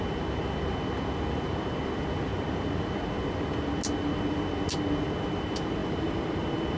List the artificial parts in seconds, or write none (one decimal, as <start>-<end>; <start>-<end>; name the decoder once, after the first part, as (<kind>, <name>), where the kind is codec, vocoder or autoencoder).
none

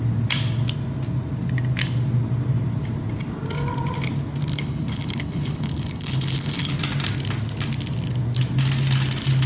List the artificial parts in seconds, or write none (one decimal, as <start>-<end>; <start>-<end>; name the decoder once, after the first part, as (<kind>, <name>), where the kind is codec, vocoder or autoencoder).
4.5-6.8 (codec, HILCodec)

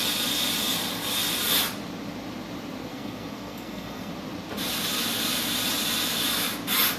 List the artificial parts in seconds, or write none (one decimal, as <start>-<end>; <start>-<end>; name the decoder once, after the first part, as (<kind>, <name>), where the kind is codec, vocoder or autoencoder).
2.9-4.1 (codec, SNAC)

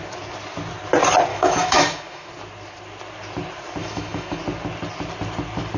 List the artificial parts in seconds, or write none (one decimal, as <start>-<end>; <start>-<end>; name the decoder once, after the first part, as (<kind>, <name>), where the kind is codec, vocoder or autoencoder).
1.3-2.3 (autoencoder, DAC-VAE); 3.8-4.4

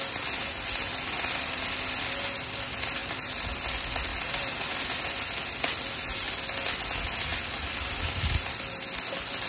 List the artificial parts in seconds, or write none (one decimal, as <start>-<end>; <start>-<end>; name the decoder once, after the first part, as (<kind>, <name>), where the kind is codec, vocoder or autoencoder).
3.0-3.5 (vocoder, BigVGAN v2); 4.1-4.6